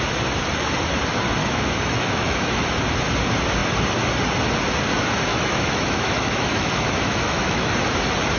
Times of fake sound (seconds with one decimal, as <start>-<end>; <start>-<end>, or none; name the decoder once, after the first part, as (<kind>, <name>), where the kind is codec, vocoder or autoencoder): 1.4-2.7 (autoencoder, DAC-VAE); 5.3-7.7